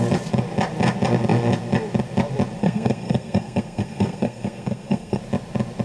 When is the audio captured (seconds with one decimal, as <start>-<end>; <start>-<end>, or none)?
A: 0.0-2.6; 5.2-5.8